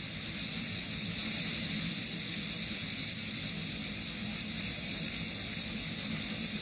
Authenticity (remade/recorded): recorded